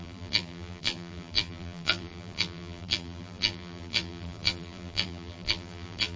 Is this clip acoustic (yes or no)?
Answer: no